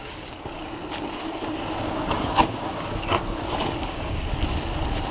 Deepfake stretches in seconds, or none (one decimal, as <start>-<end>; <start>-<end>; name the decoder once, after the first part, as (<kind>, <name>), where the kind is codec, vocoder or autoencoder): 0.0-0.8 (codec, DAC); 1.9-4.2